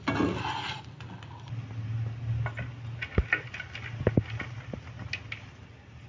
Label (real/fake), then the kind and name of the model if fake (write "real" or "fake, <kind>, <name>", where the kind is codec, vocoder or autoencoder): real